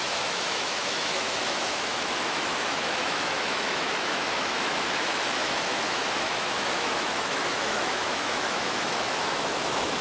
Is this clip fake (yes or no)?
yes